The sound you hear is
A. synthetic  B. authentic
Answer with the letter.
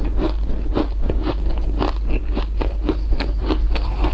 B